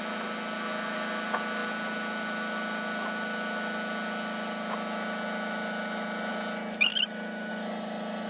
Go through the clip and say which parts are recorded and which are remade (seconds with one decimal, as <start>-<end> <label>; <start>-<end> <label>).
0.0-8.3 recorded